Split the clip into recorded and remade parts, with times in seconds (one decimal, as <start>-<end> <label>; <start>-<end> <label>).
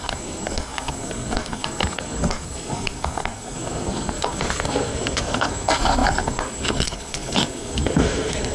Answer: 0.0-8.5 remade